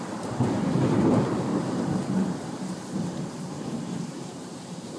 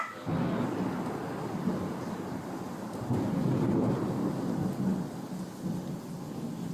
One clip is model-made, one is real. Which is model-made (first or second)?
first